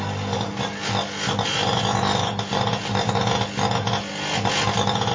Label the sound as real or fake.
real